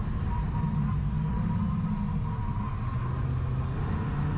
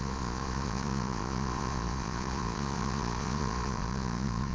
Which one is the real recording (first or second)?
first